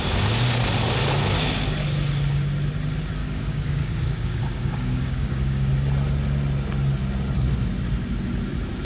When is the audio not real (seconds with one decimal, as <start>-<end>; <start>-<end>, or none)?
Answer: 3.2-5.7